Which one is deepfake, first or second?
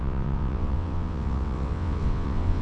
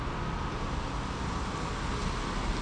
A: first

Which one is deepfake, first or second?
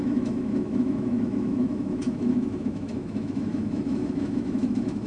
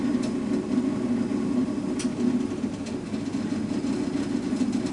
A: first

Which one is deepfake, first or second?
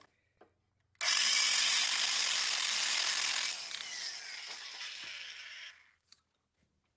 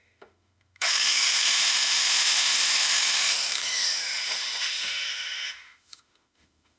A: second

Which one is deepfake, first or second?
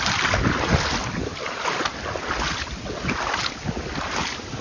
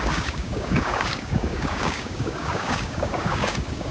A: second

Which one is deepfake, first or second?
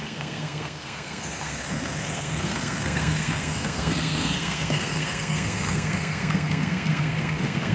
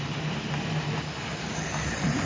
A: first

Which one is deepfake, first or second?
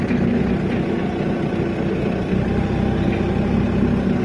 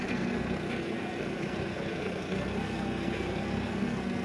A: second